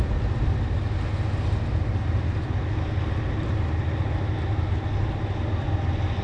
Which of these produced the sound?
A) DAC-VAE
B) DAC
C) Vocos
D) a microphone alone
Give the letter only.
D